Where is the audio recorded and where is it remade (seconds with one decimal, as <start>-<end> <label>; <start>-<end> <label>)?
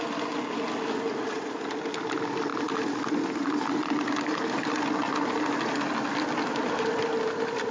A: 0.0-7.7 recorded